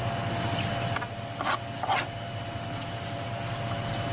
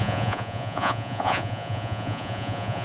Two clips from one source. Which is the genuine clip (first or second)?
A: first